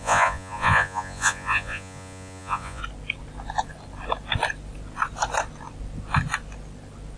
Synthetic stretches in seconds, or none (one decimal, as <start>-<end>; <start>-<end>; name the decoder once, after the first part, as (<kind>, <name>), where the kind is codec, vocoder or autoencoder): 0.0-2.8 (vocoder, Vocos)

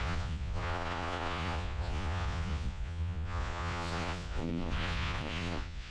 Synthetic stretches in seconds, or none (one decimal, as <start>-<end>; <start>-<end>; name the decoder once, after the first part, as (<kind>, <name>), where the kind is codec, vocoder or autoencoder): 0.0-5.9 (vocoder, Vocos)

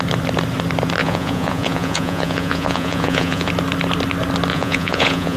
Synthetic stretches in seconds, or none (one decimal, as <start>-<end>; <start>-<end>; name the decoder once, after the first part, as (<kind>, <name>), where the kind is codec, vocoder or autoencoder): 1.0-3.5 (vocoder, Vocos); 4.5-5.4

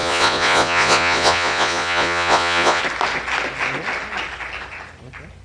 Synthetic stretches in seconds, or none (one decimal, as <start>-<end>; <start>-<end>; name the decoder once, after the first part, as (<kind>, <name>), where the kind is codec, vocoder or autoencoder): 0.0-2.8 (vocoder, Vocos)

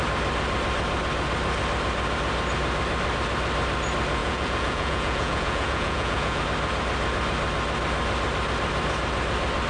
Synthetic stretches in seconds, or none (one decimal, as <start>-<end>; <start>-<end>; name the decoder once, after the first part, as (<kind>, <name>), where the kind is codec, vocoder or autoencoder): 4.2-6.4 (vocoder, Vocos)

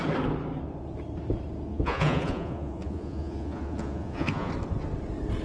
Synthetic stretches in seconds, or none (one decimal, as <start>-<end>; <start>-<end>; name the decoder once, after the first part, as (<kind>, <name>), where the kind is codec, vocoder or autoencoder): 1.7-4.5 (vocoder, Vocos)

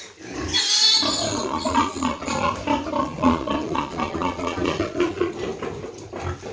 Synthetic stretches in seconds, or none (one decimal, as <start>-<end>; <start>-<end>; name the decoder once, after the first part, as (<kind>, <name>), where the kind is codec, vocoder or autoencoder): 1.3-2.5 (vocoder, Vocos); 3.0-5.3

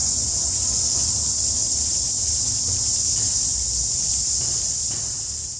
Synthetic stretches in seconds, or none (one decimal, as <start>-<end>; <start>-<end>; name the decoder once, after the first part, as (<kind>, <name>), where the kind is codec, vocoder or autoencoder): 0.0-1.1 (vocoder, Vocos)